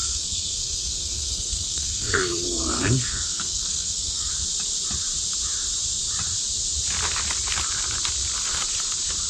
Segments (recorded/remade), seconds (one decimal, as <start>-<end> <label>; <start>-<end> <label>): 0.0-4.3 remade; 4.3-9.3 recorded